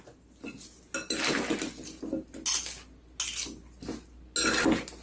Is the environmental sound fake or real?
real